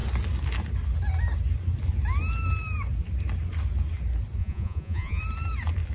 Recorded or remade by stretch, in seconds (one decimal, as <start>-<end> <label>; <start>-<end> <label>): 0.0-4.4 recorded; 4.4-5.2 remade; 5.2-5.9 recorded